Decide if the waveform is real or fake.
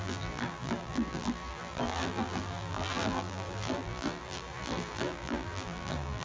fake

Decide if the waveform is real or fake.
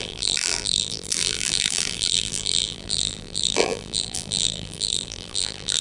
fake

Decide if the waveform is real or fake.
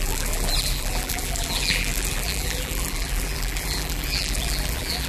fake